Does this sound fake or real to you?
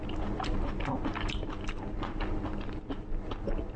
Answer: real